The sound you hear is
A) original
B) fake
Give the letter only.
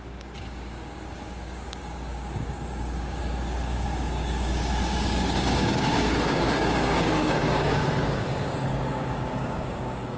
B